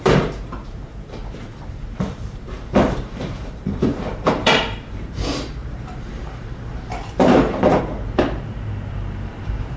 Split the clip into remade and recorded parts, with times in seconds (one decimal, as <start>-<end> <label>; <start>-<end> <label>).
0.0-1.2 remade; 1.2-1.7 recorded; 1.7-9.8 remade